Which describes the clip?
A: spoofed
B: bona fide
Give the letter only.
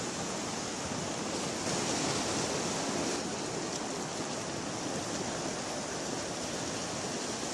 B